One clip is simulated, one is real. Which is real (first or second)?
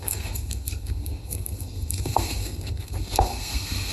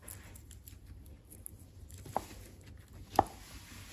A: second